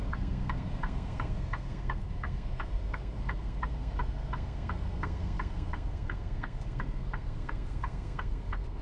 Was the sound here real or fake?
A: fake